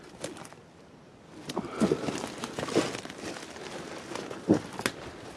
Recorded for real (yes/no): yes